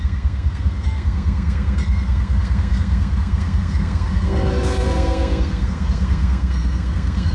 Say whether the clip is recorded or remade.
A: remade